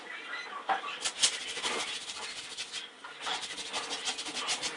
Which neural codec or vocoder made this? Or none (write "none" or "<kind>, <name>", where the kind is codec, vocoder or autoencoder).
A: none